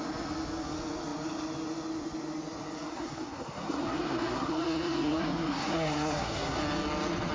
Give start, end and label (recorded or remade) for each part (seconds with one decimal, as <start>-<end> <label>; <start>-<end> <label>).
0.0-2.9 recorded; 2.9-6.6 remade; 6.6-7.3 recorded